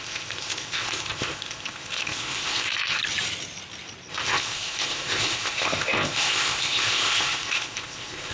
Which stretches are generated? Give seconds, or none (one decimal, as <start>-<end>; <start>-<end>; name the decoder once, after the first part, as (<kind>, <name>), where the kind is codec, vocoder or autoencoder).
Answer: 0.0-3.0 (codec, ZipCodec); 4.1-8.3